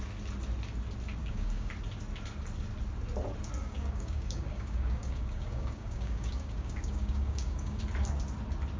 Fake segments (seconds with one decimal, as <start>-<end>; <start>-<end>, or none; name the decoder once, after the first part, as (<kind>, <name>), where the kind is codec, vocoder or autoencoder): 1.2-1.7 (codec, DAC); 3.6-7.8